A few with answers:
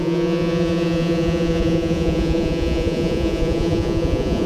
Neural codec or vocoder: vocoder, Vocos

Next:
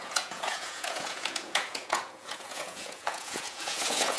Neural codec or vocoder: vocoder, Vocos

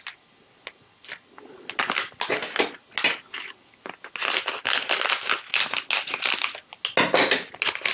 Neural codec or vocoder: none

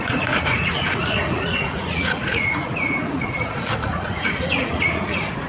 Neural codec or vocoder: vocoder, Vocos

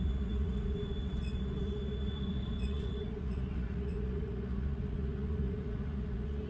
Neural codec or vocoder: vocoder, Vocos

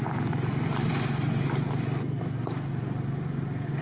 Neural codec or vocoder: none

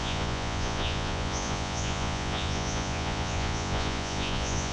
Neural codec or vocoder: vocoder, Vocos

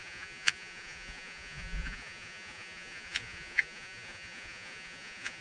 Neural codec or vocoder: vocoder, Vocos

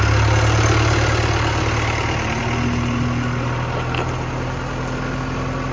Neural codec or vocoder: none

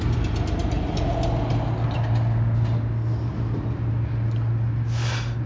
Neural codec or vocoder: none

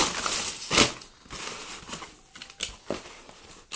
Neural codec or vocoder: none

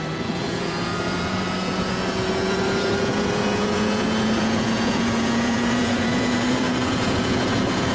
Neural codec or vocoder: vocoder, Vocos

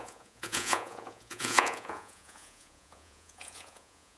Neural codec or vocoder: vocoder, Vocos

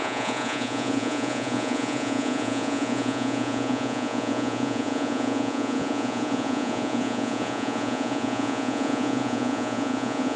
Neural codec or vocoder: vocoder, Vocos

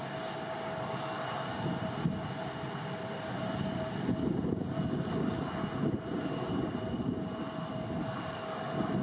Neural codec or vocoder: none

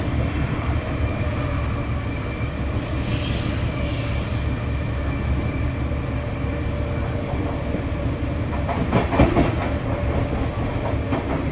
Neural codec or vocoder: none